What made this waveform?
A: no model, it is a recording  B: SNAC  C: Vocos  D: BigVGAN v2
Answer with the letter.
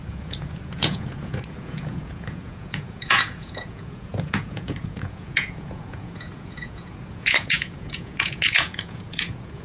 C